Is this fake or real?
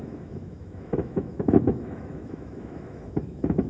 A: fake